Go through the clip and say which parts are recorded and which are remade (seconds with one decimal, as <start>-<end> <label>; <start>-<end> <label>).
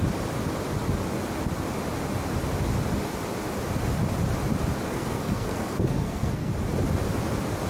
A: 0.0-4.9 recorded; 4.9-6.5 remade; 6.5-7.7 recorded